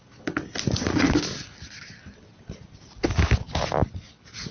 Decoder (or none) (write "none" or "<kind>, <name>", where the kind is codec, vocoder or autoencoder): none